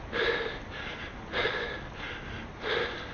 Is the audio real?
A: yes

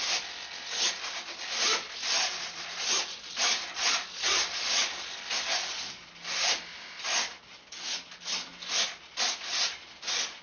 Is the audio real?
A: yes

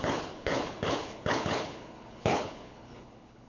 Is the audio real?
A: no